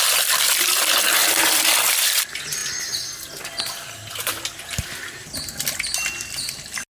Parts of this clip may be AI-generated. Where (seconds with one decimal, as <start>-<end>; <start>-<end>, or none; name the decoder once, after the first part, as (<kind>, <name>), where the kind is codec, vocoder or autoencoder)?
none